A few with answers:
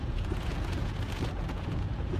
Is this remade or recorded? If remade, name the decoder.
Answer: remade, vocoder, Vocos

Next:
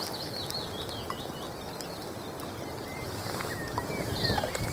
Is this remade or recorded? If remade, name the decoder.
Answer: recorded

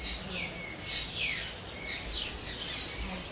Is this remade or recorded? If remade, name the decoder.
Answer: recorded